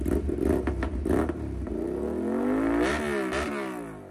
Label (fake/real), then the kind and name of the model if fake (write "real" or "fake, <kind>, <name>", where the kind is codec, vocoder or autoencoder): real